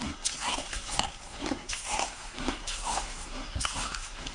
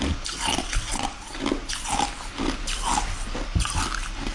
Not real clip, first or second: first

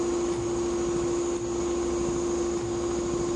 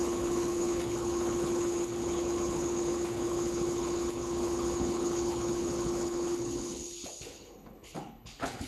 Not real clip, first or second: second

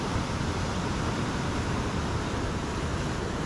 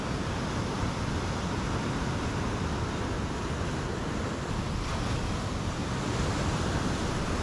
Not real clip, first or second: first